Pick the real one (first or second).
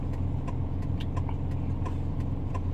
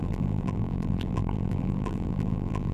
first